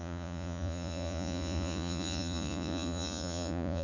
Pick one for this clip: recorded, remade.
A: remade